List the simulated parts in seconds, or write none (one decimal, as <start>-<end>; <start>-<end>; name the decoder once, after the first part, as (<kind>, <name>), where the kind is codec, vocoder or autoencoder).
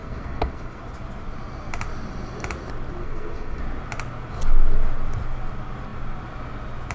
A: 0.0-0.8 (codec, SNAC); 3.0-3.6